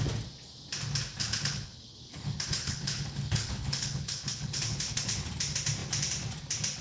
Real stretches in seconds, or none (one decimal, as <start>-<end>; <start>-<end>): 0.0-1.2; 5.3-6.8